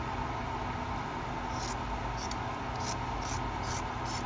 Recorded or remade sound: recorded